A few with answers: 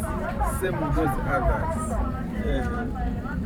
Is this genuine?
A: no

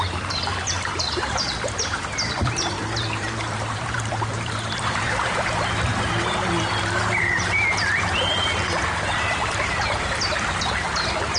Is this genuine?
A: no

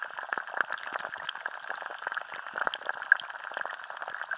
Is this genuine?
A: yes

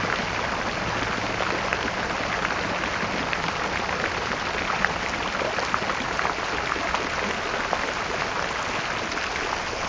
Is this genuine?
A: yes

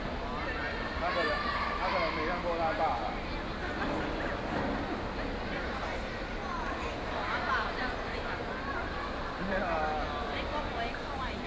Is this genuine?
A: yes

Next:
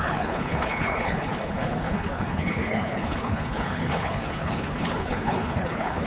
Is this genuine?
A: no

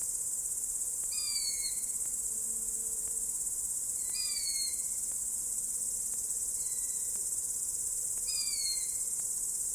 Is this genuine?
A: yes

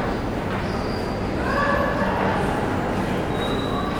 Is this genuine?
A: yes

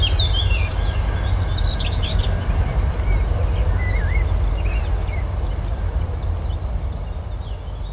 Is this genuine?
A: yes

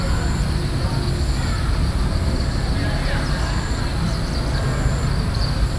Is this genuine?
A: yes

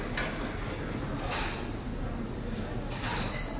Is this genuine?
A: yes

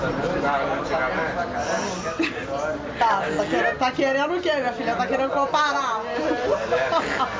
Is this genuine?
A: yes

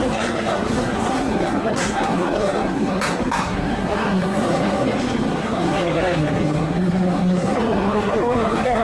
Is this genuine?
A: no